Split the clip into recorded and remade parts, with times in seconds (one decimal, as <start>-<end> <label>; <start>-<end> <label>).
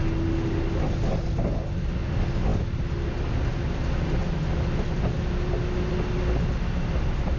0.0-7.4 recorded